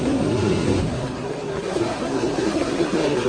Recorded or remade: remade